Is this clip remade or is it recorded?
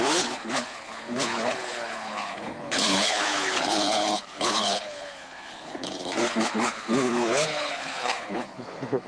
remade